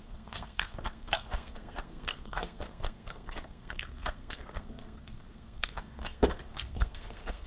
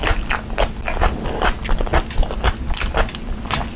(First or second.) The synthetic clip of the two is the first